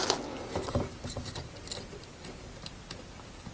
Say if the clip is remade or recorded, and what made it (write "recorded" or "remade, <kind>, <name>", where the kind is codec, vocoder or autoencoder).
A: recorded